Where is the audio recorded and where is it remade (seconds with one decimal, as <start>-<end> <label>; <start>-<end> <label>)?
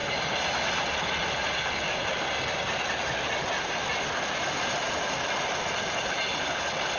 0.0-7.0 recorded